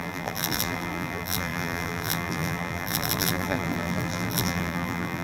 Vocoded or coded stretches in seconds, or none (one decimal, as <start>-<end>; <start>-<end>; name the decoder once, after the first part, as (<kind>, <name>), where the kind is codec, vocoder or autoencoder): 0.0-5.2 (vocoder, BigVGAN v2)